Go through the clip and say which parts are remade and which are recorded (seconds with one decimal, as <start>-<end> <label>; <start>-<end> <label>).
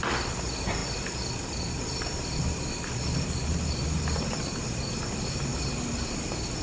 0.0-5.5 recorded; 5.5-6.6 remade